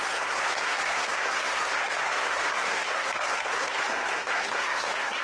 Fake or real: fake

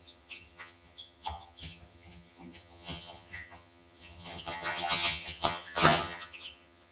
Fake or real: fake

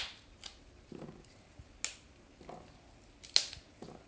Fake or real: real